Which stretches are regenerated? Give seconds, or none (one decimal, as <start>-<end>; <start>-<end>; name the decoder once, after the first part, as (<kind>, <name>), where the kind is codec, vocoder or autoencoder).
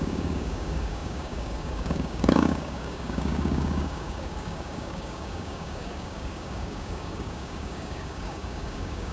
0.0-9.1 (codec, DAC)